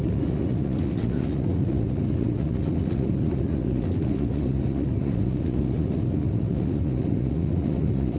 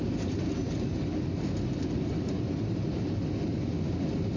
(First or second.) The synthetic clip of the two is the first